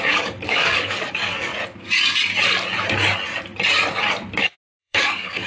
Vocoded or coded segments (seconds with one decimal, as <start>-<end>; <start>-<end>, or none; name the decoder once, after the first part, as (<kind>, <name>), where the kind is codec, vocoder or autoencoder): 0.0-1.5 (codec, DAC); 4.8-5.5